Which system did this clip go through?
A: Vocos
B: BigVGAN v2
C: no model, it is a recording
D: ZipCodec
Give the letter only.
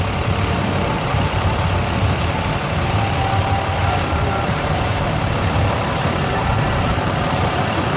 B